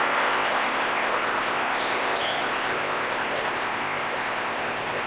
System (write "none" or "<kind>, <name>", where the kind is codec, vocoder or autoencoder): codec, ZipCodec